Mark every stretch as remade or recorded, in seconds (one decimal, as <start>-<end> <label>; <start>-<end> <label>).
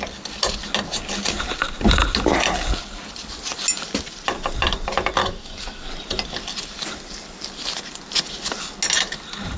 0.0-5.2 recorded; 5.2-5.9 remade; 5.9-9.6 recorded